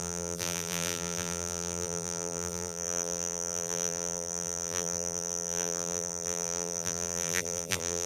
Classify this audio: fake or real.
fake